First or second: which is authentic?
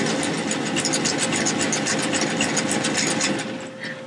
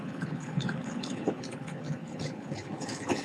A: first